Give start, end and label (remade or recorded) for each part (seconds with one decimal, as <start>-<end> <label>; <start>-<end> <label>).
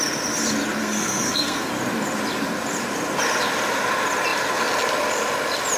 0.0-0.8 recorded; 0.8-1.7 remade; 1.7-5.8 recorded